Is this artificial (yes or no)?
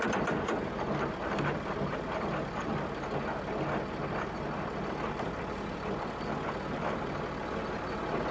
no